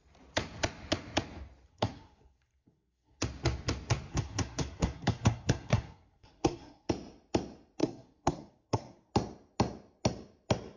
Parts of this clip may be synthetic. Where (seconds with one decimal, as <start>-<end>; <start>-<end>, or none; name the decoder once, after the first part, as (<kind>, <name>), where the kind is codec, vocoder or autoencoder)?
1.7-3.2 (codec, SNAC); 4.1-6.9; 7.8-9.1